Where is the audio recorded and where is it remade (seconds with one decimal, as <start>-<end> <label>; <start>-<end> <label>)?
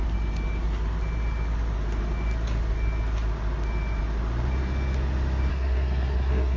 0.0-5.5 recorded; 5.5-6.6 remade